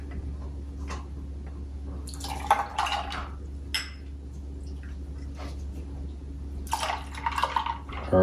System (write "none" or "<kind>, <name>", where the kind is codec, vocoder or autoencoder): none